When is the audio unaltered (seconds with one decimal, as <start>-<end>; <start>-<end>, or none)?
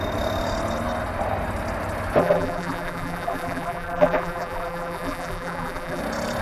0.0-2.2; 6.0-6.4